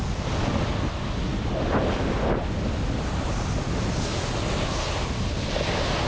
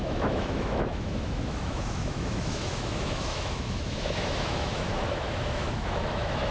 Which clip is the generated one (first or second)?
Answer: second